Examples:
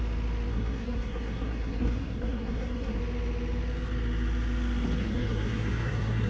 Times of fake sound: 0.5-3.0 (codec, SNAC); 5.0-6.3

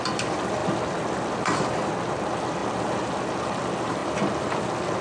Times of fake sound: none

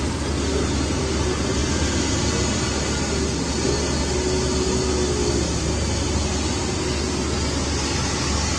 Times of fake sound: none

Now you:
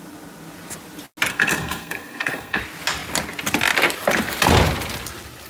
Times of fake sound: 1.3-2.6 (codec, SNAC)

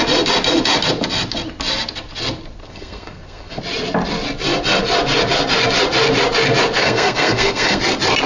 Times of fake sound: 2.6-3.6 (codec, SNAC); 6.8-7.8

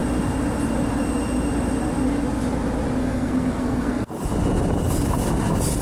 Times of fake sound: 3.0-4.1 (codec, SNAC)